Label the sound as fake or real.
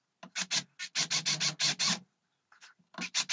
real